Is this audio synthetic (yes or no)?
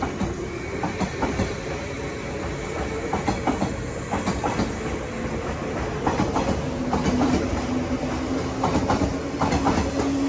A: no